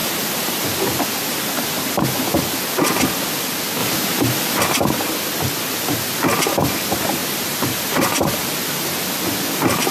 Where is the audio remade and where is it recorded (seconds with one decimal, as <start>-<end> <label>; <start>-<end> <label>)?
0.0-1.0 remade; 1.0-3.8 recorded; 3.8-4.6 remade; 4.6-7.2 recorded; 7.2-8.4 remade; 8.4-9.9 recorded